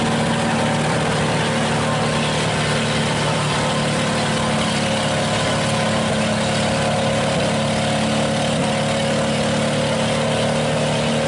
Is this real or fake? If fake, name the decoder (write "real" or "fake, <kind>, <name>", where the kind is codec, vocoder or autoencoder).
real